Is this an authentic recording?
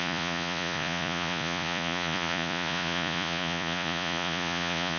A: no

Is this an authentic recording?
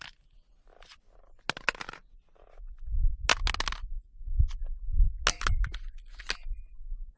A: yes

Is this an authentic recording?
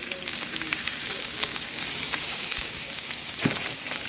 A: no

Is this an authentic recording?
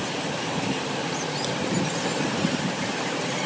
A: no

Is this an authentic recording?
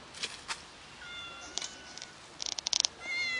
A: yes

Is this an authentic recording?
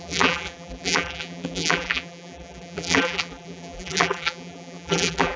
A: no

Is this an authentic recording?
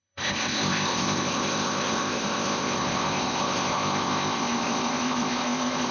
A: no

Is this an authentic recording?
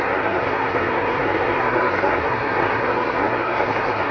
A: no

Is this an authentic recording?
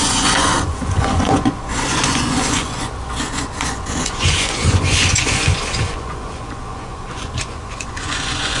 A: no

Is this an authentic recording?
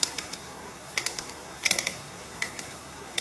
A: no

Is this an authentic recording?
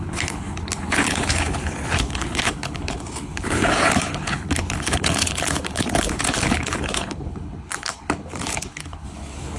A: no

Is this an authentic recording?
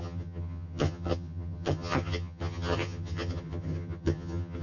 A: no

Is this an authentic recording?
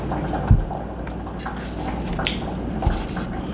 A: yes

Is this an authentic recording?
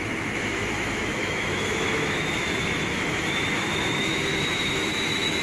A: no